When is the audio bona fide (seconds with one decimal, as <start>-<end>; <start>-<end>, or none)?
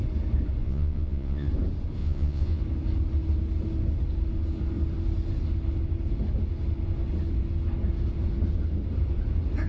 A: 0.0-0.6; 1.5-2.0; 2.6-9.7